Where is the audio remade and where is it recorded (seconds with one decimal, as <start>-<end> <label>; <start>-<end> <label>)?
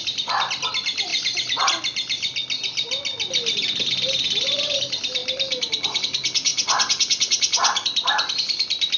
0.0-9.0 recorded